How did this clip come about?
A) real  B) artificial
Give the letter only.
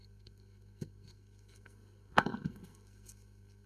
B